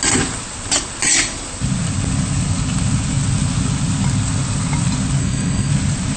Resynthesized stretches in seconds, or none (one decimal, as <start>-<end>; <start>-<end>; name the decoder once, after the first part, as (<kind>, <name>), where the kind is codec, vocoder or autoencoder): 5.2-5.7 (codec, SNAC)